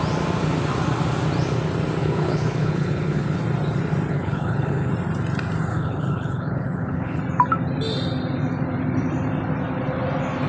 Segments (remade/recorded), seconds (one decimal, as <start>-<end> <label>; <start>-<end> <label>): 0.0-2.0 recorded; 2.0-3.4 remade; 3.4-4.1 recorded; 4.1-4.9 remade; 4.9-5.7 recorded; 5.7-7.2 remade; 7.2-10.5 recorded